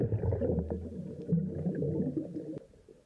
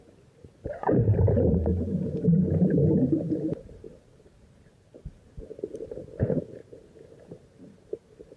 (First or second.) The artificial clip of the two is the second